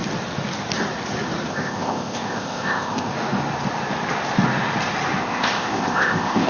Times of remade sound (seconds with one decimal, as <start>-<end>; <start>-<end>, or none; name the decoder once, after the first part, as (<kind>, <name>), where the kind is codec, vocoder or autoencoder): 1.5-3.1 (codec, ZipCodec); 5.2-6.5